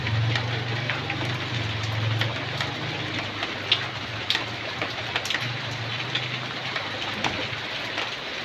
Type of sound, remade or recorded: recorded